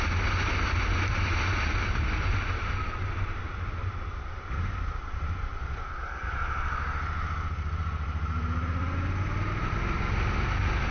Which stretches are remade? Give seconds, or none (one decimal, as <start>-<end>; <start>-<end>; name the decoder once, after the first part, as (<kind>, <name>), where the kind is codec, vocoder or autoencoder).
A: none